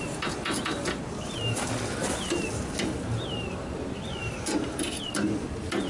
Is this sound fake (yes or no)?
no